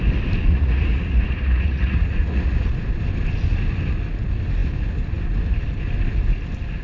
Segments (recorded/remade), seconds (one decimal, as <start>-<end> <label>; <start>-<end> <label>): 0.0-0.5 recorded; 0.5-2.7 remade; 2.7-6.8 recorded